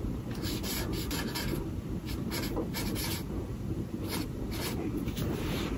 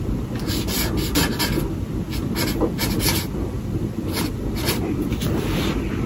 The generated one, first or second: first